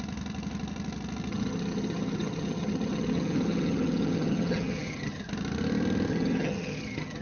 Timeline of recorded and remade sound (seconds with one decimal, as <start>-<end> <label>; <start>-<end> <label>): 0.0-1.3 recorded; 1.3-5.2 remade; 5.2-6.1 recorded; 6.1-7.2 remade